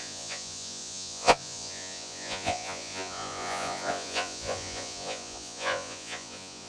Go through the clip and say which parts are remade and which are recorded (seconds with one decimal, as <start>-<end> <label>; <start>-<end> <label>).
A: 0.0-6.7 remade